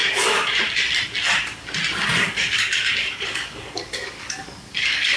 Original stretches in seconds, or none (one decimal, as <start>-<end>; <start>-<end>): 0.6-2.2

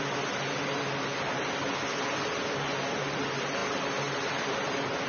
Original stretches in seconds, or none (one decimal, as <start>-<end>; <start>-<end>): 0.0-5.1

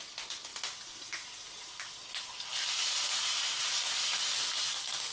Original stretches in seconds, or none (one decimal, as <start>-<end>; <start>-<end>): 0.0-5.1

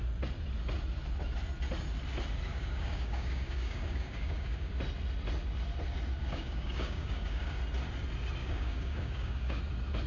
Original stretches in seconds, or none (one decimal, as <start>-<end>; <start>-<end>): 0.0-2.5; 4.7-6.2; 7.6-8.4; 9.6-10.1